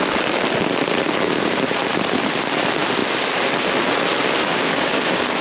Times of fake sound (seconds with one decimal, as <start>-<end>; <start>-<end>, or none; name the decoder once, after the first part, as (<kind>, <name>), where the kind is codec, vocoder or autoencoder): 4.4-5.4 (codec, DAC)